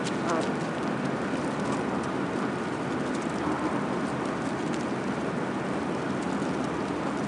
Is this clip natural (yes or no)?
yes